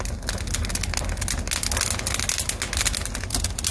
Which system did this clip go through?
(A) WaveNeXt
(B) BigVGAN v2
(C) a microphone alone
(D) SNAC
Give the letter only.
C